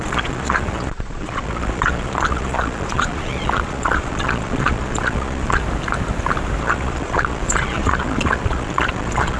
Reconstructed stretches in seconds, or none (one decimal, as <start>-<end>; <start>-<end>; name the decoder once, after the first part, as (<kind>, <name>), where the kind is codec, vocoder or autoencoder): 0.0-5.6 (vocoder, Vocos); 6.6-9.4